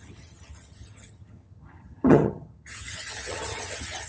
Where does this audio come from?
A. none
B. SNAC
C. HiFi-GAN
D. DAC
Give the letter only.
C